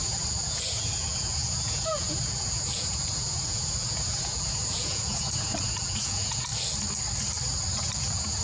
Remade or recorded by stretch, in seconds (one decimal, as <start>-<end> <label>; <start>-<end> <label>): 0.0-6.5 remade; 6.5-7.7 recorded; 7.7-8.4 remade